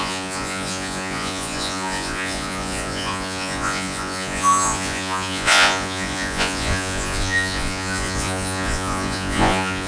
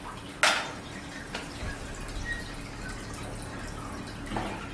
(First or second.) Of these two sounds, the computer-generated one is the first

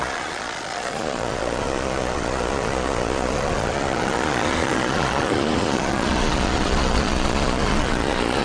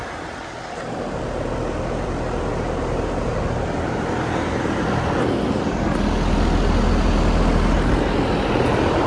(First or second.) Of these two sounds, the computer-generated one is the first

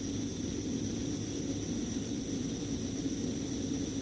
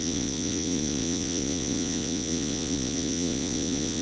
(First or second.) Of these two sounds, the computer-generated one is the second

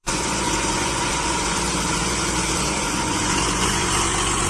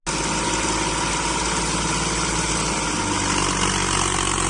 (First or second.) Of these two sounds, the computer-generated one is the first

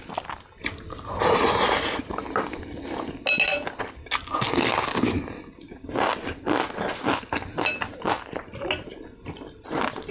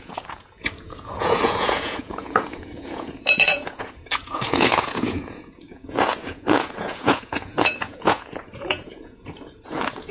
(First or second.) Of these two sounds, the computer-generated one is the second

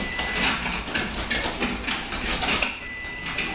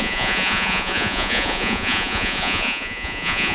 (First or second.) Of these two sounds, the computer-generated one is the second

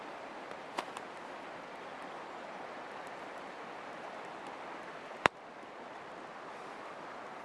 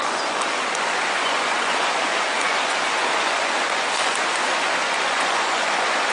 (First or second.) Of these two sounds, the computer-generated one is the second